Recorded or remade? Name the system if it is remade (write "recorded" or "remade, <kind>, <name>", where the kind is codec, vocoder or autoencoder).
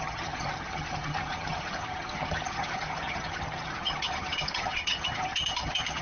remade, vocoder, HiFi-GAN